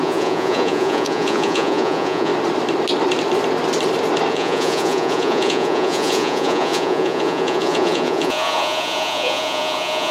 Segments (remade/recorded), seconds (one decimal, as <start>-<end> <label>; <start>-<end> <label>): 0.0-2.3 remade; 2.3-4.3 recorded; 4.3-10.1 remade